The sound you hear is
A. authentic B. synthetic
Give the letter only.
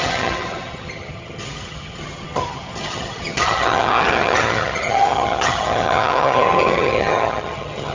B